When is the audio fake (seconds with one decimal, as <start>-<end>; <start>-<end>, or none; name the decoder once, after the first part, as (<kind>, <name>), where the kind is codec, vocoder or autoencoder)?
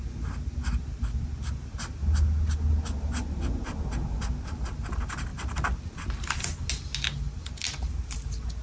none